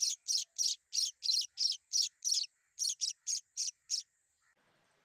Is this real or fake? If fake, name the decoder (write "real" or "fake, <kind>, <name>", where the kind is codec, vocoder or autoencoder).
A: real